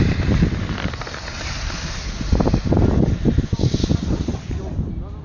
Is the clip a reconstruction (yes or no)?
no